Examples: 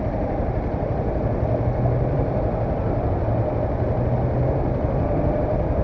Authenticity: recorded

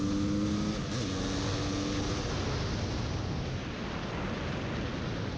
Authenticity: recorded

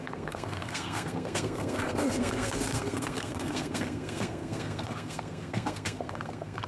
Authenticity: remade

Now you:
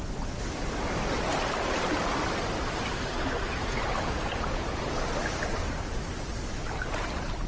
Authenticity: recorded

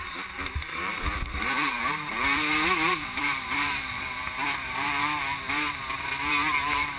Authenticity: remade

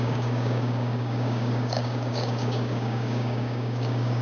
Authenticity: remade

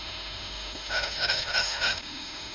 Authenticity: remade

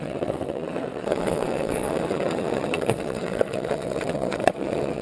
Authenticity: remade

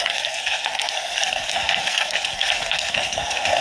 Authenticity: remade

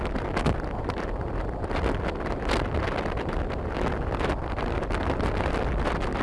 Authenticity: recorded